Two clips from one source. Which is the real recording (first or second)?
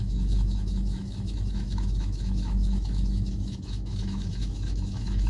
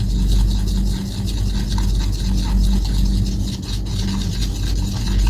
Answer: second